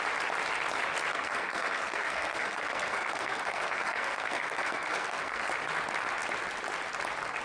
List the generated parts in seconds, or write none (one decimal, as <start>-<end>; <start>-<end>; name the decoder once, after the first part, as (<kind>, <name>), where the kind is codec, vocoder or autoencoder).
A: 1.1-5.5 (codec, SNAC)